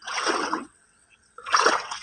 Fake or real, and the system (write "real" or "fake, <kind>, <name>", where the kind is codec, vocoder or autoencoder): fake, vocoder, WaveNeXt